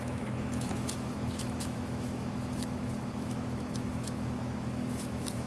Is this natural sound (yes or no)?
no